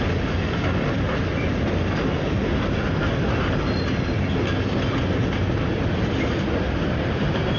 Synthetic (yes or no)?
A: no